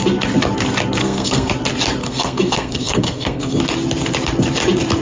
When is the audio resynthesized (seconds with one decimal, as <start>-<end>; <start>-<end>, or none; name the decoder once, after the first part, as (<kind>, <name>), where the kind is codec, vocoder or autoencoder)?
1.0-1.5 (codec, SNAC); 2.0-3.6